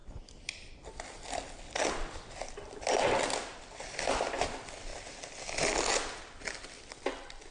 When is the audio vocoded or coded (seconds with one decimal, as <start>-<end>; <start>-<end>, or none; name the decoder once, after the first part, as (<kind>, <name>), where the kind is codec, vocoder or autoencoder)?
none